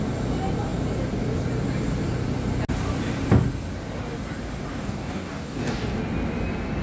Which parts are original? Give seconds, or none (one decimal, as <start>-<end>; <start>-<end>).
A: 0.0-4.7; 6.0-6.8